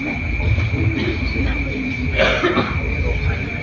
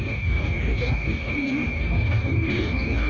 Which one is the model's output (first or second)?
second